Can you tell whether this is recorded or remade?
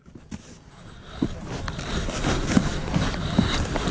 recorded